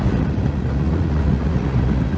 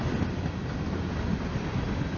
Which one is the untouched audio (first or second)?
second